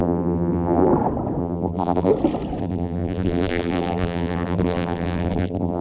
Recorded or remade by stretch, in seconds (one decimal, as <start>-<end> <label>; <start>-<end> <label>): 0.0-0.9 remade; 0.9-1.4 recorded; 1.4-2.1 remade; 2.1-2.6 recorded; 2.6-5.8 remade